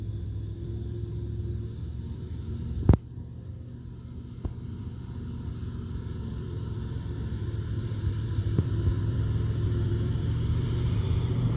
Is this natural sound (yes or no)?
no